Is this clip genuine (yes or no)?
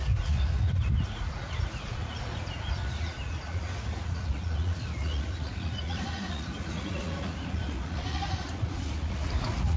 no